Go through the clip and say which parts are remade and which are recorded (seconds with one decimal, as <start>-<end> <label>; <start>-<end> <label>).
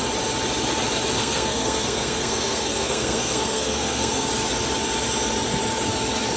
0.0-1.2 recorded; 1.2-4.3 remade; 4.3-6.4 recorded